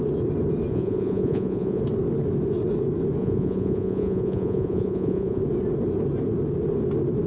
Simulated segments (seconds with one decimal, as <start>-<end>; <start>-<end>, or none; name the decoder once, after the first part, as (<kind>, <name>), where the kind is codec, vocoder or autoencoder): 0.7-1.8 (vocoder, Vocos); 3.2-5.4